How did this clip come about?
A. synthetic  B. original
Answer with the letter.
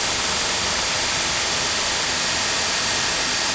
B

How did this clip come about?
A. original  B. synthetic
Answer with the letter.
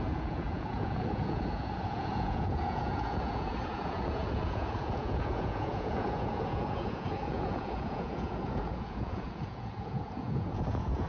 B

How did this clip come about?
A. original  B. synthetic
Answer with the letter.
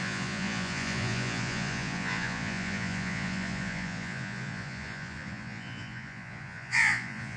B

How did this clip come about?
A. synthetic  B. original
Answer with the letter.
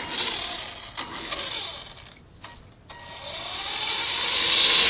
B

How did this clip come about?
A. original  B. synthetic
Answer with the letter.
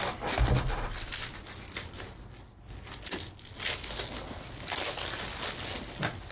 A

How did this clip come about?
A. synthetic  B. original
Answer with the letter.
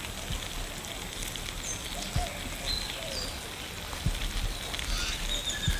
B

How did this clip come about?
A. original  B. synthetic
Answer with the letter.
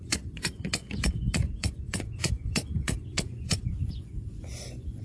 B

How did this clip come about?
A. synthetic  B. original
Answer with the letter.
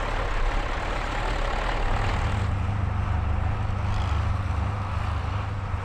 B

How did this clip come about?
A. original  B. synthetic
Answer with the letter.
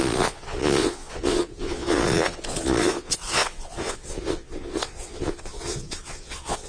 B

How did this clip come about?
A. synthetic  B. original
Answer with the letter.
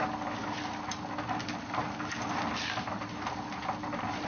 B